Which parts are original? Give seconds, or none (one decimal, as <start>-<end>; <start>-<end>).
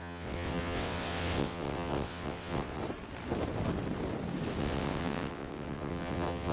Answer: 2.8-4.6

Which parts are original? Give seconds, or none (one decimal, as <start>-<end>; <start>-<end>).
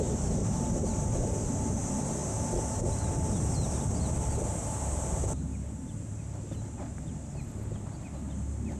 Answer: 0.0-8.8